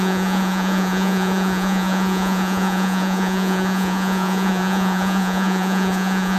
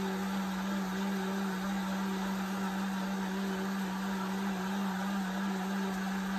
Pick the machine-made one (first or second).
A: first